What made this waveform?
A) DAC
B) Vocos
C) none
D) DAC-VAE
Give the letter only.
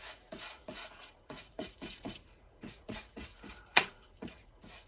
B